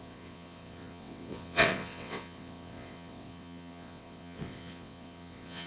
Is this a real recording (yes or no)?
no